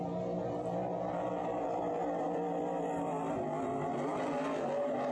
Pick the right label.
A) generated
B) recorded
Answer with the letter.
B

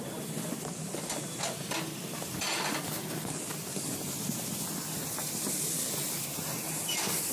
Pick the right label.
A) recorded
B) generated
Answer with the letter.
A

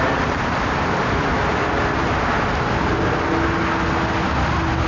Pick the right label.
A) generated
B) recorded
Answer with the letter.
B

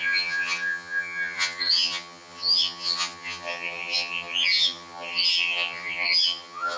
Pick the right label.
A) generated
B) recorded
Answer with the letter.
A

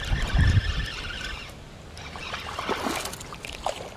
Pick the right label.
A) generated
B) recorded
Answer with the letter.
B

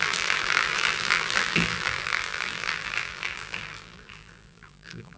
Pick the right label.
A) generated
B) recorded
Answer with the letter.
A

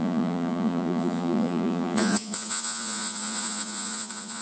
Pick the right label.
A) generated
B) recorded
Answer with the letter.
A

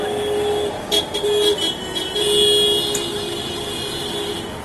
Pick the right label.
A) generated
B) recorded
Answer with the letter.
B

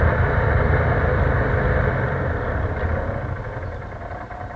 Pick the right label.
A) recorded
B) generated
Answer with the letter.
A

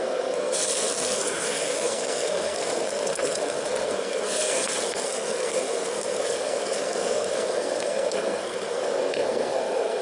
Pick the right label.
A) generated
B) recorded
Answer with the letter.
A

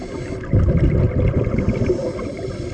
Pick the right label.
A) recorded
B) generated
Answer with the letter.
A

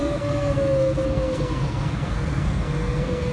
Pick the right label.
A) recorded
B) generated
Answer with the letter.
B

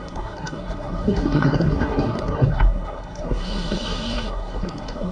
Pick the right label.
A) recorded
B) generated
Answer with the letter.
B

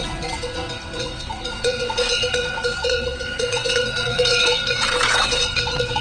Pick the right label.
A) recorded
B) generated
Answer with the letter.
B